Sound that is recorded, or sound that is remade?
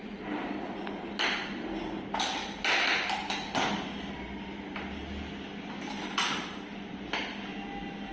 recorded